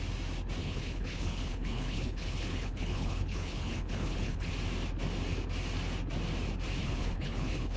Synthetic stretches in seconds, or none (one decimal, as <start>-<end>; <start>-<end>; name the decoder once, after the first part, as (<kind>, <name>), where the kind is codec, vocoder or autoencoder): 0.6-4.5 (codec, HILCodec); 6.8-7.8